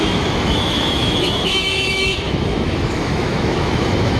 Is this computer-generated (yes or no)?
yes